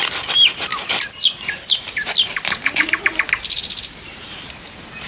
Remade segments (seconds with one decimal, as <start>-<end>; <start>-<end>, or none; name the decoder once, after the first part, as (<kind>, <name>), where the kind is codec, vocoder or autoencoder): none